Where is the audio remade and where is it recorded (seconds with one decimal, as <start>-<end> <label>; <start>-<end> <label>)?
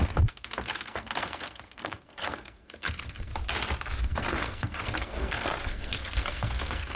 0.0-3.3 remade; 3.3-4.0 recorded; 4.0-7.0 remade